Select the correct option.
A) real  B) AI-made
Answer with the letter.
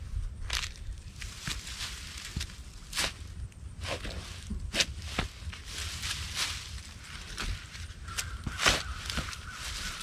A